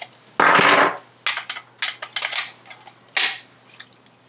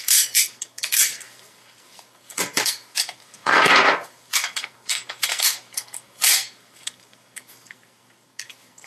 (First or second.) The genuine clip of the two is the first